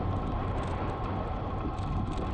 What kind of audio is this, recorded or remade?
recorded